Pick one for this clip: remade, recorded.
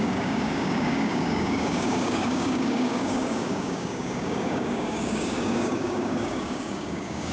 remade